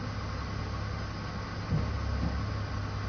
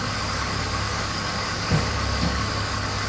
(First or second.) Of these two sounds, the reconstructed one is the second